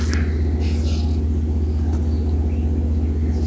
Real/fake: real